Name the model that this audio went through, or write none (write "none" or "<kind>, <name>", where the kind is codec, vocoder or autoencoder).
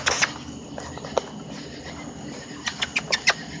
none